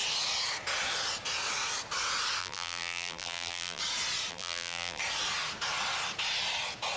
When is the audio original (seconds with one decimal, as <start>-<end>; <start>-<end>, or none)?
0.0-2.4; 3.8-4.3; 5.0-7.0